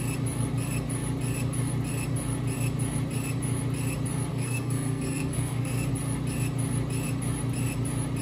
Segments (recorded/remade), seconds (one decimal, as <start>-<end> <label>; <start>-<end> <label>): 0.0-4.3 recorded; 4.3-5.9 remade; 5.9-8.2 recorded